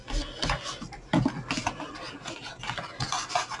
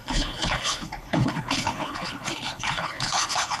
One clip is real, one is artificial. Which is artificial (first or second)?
second